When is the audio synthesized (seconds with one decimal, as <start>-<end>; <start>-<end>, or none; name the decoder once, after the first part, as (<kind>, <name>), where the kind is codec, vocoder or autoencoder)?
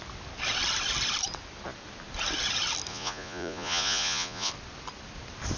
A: 2.9-4.5 (vocoder, Vocos)